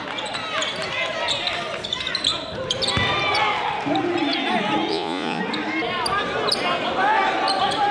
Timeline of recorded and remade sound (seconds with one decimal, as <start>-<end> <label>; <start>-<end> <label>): 0.0-4.9 recorded; 4.9-5.4 remade; 5.4-7.9 recorded